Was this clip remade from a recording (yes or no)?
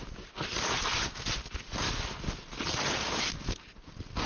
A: no